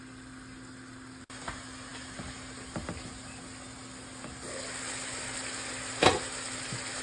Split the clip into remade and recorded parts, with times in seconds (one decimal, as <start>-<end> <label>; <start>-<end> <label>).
0.0-7.0 recorded